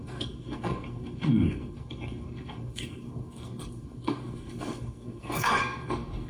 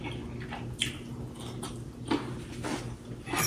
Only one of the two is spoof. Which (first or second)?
first